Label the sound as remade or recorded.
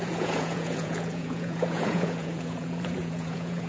remade